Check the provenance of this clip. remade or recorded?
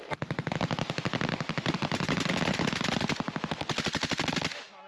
recorded